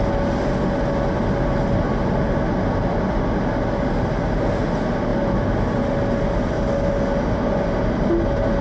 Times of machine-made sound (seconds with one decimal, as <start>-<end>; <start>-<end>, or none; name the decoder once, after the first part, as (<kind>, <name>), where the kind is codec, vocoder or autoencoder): 5.1-5.8 (vocoder, BigVGAN v2)